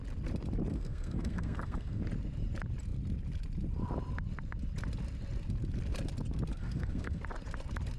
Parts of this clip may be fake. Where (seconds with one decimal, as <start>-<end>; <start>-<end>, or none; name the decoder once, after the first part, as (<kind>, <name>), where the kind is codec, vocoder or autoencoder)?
0.7-2.0 (codec, SNAC); 6.6-7.2